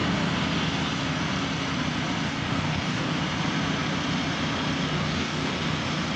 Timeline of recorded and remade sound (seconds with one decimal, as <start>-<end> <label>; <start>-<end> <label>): 0.0-2.3 recorded; 2.3-3.2 remade; 3.2-4.9 recorded; 4.9-5.5 remade; 5.5-6.2 recorded